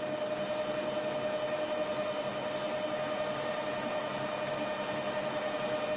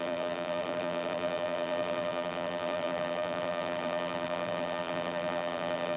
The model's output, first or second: second